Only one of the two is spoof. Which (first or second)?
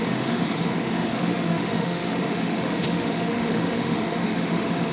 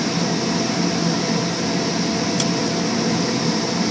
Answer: first